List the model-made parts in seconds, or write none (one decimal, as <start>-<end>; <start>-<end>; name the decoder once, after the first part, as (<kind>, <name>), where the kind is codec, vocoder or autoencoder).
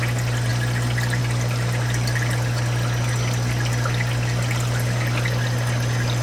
none